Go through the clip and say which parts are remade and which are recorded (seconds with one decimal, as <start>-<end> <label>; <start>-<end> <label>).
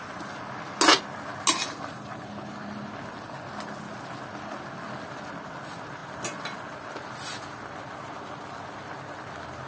0.0-9.7 recorded